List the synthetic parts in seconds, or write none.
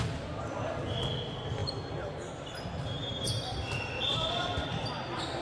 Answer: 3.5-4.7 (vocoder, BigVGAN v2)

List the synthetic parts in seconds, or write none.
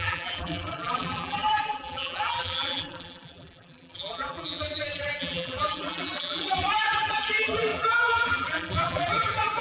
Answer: 0.0-9.6 (vocoder, BigVGAN v2)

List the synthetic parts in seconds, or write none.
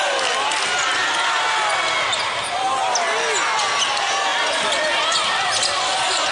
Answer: none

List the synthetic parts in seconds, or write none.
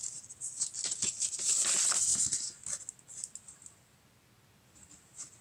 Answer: none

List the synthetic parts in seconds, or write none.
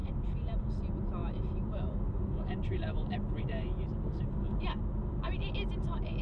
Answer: 0.0-0.6 (vocoder, BigVGAN v2); 1.2-4.4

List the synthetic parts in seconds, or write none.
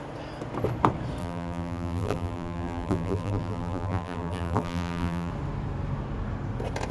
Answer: 1.2-5.3 (vocoder, BigVGAN v2)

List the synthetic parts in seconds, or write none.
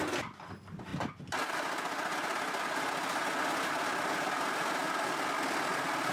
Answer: none